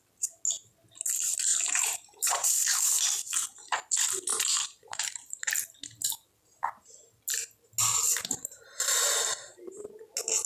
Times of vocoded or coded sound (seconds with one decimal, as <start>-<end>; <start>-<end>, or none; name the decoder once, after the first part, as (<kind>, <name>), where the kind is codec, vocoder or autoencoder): 1.5-2.5 (vocoder, BigVGAN v2); 4.3-5.4; 8.1-9.9